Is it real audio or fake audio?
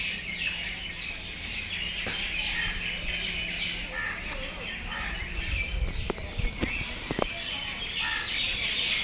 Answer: real